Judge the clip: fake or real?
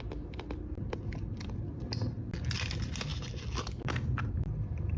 real